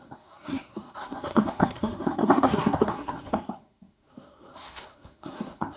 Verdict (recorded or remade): remade